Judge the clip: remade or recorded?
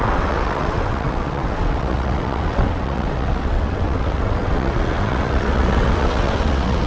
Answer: remade